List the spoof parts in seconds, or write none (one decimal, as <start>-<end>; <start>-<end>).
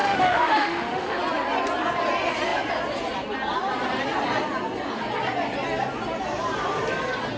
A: 0.0-1.2